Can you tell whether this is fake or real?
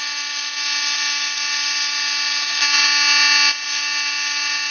real